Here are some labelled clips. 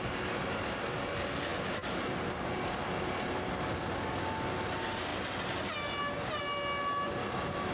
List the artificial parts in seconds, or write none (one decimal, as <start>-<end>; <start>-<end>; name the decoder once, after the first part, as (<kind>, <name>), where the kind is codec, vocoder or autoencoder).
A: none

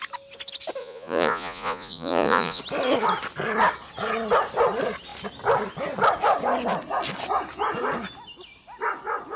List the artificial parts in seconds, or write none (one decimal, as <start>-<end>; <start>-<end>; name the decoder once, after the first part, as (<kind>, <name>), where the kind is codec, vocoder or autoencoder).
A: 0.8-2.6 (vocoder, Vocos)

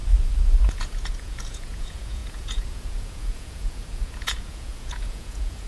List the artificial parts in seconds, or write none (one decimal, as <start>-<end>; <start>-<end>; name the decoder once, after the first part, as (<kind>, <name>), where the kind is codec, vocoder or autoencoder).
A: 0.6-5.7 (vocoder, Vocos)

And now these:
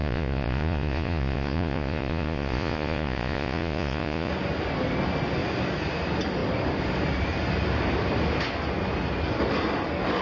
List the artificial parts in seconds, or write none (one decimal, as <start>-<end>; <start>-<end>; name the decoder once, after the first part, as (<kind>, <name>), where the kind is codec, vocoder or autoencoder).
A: 0.0-4.3 (vocoder, Vocos)

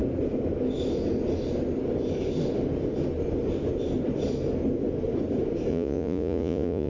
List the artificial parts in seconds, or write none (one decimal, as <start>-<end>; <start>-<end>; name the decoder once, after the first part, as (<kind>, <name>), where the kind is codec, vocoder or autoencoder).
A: 5.7-6.9 (vocoder, Vocos)